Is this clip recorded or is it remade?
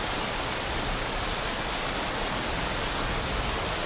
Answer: recorded